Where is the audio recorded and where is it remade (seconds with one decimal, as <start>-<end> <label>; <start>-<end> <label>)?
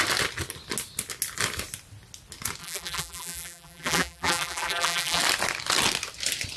0.0-2.6 recorded; 2.6-5.2 remade; 5.2-6.6 recorded